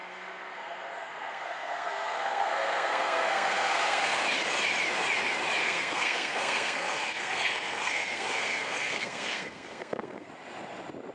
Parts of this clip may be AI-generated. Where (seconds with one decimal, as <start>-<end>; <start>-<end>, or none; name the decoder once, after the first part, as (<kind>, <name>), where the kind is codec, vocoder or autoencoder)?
0.0-4.2 (codec, SNAC); 5.6-10.3

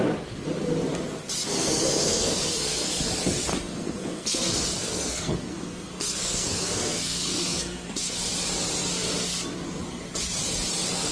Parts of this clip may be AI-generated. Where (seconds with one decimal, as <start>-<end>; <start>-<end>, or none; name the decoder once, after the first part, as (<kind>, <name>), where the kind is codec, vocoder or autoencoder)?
1.4-3.0 (codec, SNAC); 3.5-8.3

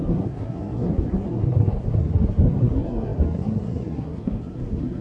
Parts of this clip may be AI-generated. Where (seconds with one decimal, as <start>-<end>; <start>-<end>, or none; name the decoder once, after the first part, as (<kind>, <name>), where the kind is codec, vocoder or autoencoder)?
0.0-5.0 (codec, SNAC)

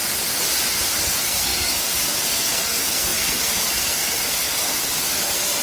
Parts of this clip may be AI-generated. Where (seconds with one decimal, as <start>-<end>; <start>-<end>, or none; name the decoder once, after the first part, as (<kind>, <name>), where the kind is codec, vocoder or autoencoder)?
1.0-5.6 (codec, SNAC)